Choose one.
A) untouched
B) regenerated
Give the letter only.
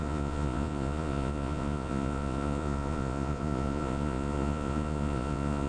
B